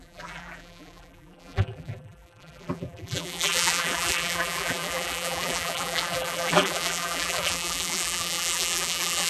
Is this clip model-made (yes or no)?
yes